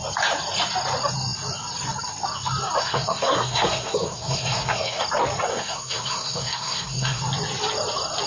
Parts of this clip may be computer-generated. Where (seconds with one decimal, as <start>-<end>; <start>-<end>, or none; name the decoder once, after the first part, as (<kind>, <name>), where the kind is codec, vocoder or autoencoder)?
2.8-5.0 (codec, SNAC); 5.5-7.2